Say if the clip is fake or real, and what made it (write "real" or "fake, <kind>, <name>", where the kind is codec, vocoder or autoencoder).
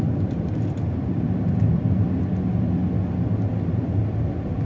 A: real